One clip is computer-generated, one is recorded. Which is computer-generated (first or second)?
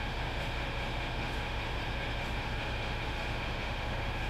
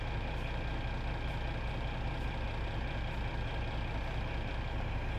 first